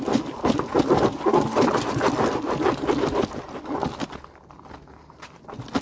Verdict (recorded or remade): recorded